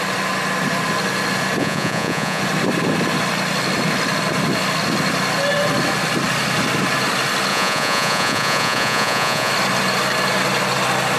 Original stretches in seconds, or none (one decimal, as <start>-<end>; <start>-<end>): 0.0-1.6; 2.4-7.5; 9.5-11.2